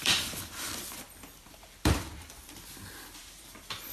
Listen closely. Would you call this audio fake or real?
fake